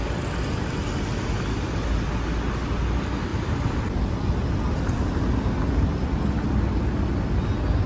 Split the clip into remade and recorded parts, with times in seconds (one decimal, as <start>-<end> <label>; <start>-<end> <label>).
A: 0.0-7.9 recorded